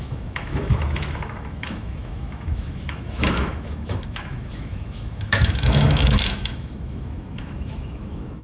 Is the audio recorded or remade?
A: remade